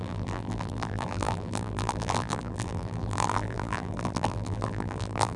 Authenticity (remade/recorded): remade